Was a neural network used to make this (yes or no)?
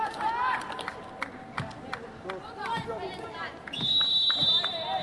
no